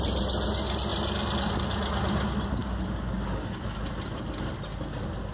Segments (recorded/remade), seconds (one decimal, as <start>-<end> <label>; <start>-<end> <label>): 0.0-5.3 recorded